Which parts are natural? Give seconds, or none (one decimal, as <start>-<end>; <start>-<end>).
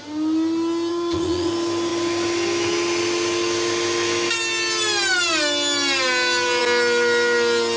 0.0-0.9; 1.5-7.8